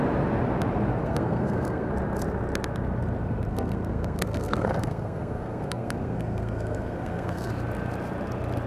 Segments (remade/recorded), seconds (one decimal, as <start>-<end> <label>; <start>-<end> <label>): 0.0-1.0 recorded; 1.0-1.9 remade; 1.9-3.5 recorded; 3.5-7.5 remade; 7.5-8.7 recorded